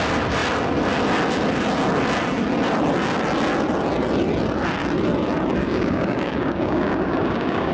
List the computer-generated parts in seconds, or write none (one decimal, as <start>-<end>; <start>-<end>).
5.6-7.7